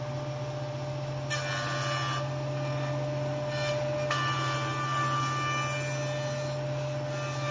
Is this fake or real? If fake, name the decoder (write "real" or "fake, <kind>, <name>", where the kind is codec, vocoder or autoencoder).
real